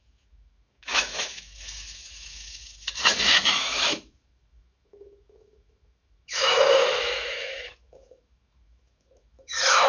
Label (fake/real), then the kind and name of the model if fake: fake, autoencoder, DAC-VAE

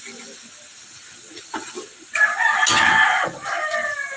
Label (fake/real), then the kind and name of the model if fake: real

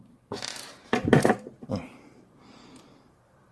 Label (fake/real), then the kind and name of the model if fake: fake, vocoder, BigVGAN v2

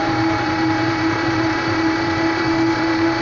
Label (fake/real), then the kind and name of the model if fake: fake, vocoder, BigVGAN v2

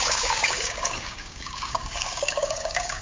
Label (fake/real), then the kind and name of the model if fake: fake, codec, DAC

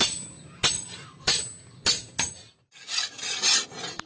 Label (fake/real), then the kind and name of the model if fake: real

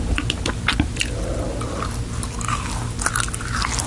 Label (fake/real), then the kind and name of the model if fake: real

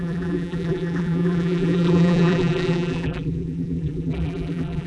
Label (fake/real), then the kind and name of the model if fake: fake, vocoder, BigVGAN v2